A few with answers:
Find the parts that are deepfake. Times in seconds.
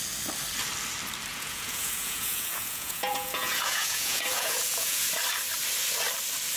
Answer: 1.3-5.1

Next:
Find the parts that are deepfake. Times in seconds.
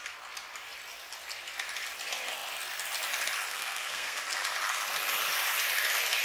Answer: 3.5-4.2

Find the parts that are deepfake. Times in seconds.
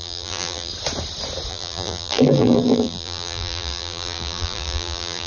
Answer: 0.0-0.7; 1.5-5.3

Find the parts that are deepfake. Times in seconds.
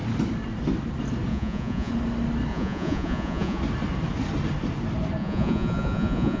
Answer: 1.3-1.9; 2.5-3.6; 5.2-6.4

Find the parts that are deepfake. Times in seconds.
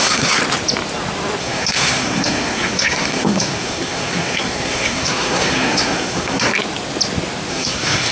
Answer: 0.0-0.4; 1.4-6.5; 7.5-8.1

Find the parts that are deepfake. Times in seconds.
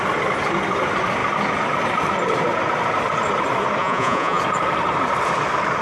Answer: 3.8-4.4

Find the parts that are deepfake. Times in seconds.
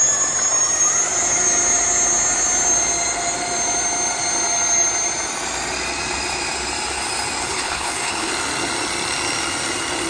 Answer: 7.4-8.3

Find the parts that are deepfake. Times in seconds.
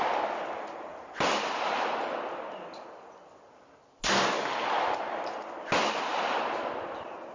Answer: 0.9-3.7; 6.1-6.7